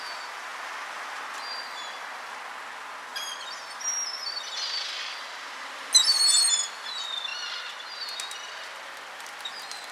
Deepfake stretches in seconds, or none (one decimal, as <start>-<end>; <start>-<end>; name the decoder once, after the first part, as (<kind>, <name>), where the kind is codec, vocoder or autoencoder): none